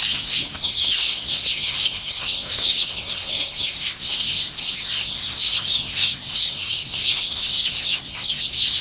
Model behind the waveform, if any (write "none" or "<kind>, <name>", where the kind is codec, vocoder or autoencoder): codec, SNAC